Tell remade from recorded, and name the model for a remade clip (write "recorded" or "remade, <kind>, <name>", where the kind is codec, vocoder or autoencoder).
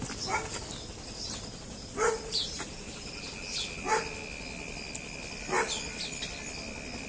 recorded